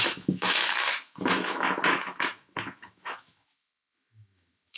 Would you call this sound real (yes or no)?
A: no